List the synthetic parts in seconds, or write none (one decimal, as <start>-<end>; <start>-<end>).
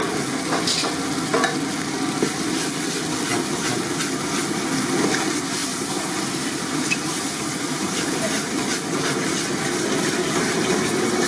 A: 5.6-9.4